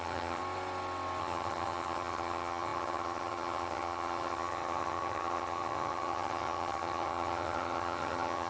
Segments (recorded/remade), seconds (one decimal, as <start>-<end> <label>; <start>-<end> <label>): 0.0-0.4 remade; 0.4-1.2 recorded; 1.2-8.5 remade